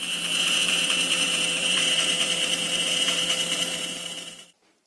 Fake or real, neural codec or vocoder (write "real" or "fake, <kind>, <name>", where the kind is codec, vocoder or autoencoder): fake, vocoder, BigVGAN v2